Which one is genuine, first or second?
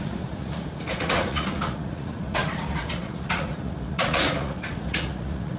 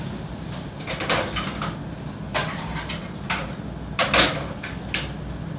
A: second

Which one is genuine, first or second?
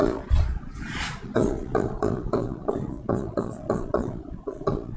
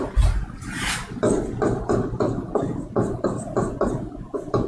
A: second